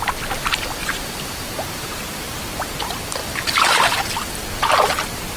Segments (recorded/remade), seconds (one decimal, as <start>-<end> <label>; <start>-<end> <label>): 0.0-0.8 recorded; 0.8-2.4 remade; 2.4-3.2 recorded; 3.2-4.0 remade; 4.0-5.4 recorded